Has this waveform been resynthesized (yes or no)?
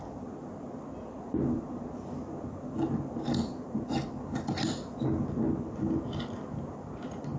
no